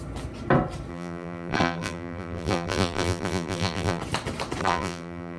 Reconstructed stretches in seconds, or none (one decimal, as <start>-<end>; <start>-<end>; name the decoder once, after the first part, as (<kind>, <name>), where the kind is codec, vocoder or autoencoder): 0.9-4.0 (vocoder, BigVGAN v2); 4.6-5.4